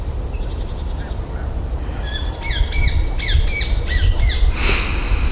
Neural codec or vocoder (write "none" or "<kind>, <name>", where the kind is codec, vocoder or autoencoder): none